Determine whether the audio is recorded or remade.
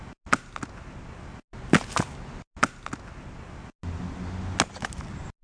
recorded